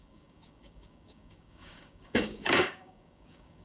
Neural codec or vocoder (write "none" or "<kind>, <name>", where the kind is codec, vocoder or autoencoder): codec, DAC